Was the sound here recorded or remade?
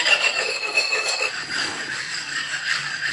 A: remade